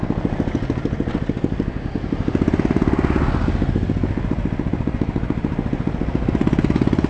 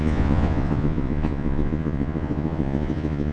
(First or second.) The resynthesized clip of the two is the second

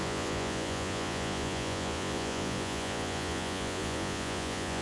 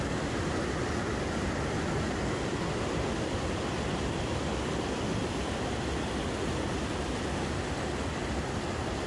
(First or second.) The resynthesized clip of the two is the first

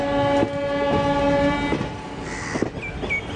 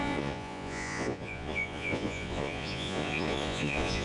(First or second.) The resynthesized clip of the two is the second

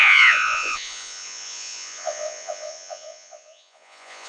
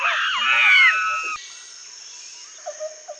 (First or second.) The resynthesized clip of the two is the first